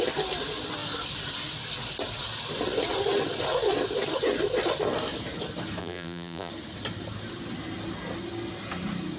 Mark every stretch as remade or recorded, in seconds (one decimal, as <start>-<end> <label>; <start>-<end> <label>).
0.0-5.8 recorded; 5.8-6.5 remade; 6.5-9.2 recorded